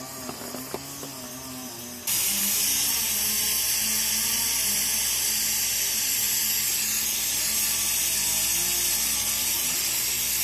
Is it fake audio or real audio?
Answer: real